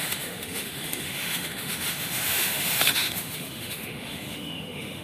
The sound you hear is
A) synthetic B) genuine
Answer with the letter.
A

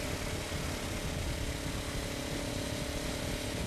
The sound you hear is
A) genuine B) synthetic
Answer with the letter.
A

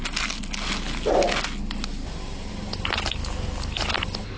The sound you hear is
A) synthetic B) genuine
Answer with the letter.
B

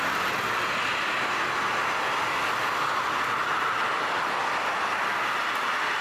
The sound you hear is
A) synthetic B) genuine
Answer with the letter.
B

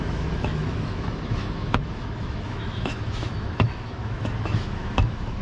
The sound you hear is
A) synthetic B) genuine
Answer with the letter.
A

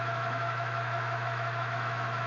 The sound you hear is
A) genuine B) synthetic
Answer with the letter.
B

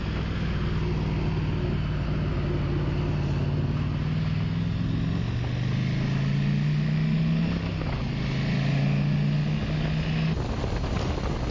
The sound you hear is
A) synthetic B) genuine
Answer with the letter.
B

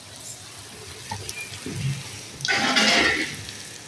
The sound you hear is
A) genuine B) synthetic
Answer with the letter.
A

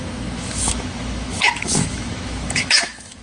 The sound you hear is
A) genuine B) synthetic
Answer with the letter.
B